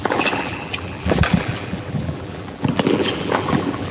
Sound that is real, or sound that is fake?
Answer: fake